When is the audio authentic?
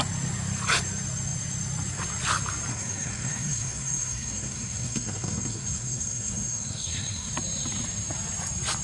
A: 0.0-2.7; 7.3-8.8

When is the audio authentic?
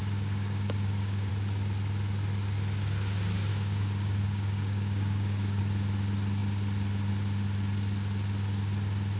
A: 1.3-3.5; 5.6-9.2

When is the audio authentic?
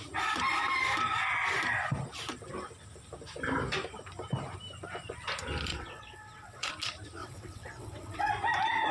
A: 0.0-5.7; 6.7-7.2; 8.3-8.9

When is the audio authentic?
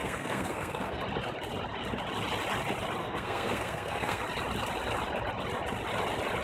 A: 1.0-3.0; 4.2-6.4